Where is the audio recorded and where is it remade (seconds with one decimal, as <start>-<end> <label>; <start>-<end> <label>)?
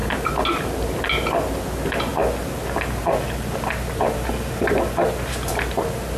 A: 0.0-6.2 recorded